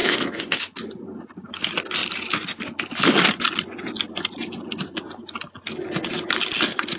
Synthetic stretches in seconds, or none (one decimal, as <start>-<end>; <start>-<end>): 0.0-0.6